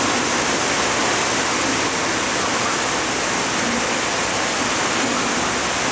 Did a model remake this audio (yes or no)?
no